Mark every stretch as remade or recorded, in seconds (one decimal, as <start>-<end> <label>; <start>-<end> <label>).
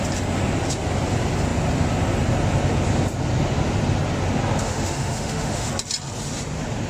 0.0-4.6 recorded; 4.6-5.7 remade; 5.7-6.9 recorded